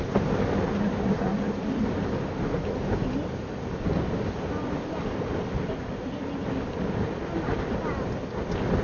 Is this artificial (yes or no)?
no